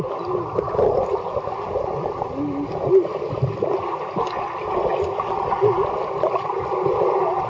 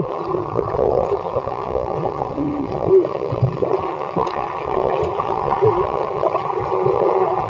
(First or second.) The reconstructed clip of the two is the second